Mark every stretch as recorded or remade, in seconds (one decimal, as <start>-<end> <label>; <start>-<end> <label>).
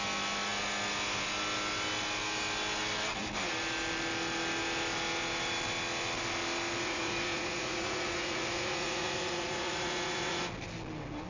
0.0-6.8 recorded; 6.8-10.4 remade; 10.4-11.3 recorded